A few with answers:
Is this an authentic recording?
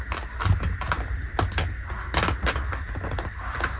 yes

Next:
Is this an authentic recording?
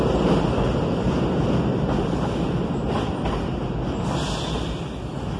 yes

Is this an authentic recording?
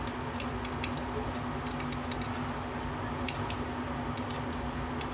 yes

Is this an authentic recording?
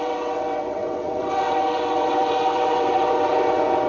no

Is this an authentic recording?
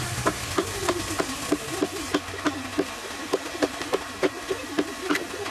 yes